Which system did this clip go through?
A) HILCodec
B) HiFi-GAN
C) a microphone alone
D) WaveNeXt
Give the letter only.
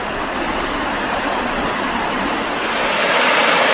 C